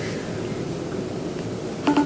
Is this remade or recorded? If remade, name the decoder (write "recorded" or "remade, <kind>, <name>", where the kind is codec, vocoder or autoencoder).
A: recorded